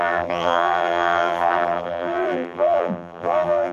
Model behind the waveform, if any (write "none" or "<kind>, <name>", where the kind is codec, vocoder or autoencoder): vocoder, BigVGAN v2